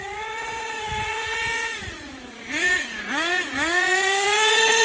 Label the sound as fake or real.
fake